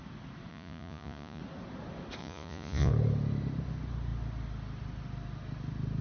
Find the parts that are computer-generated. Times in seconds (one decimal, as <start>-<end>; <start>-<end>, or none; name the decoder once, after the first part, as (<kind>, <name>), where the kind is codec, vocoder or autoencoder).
0.5-1.4 (vocoder, Vocos); 2.2-2.9